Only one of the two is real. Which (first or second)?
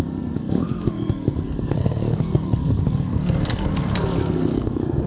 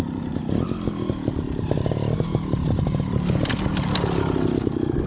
second